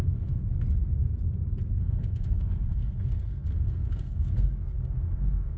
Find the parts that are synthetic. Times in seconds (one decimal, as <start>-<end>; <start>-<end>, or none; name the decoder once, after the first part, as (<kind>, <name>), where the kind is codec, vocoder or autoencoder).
0.0-0.4 (codec, SNAC); 1.8-5.6